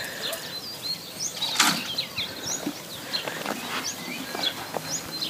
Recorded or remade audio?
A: recorded